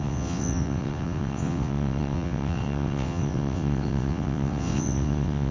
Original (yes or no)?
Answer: no